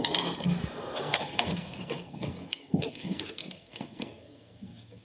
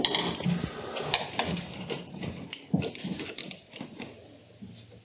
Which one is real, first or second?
second